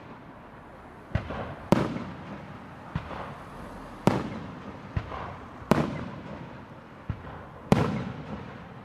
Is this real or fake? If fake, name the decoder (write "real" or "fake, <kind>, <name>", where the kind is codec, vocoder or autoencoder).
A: fake, vocoder, BigVGAN v2